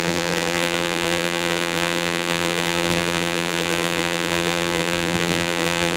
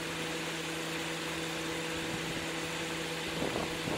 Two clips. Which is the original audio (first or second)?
second